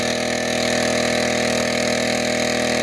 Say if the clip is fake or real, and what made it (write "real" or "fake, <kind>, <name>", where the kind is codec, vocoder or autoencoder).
real